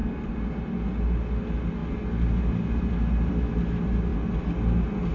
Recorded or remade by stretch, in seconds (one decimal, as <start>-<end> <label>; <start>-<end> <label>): 0.0-5.1 recorded